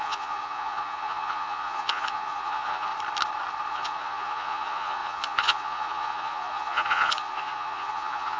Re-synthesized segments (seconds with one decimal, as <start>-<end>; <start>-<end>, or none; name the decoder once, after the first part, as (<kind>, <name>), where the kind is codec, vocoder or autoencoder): 0.0-2.9 (vocoder, Vocos); 3.7-8.4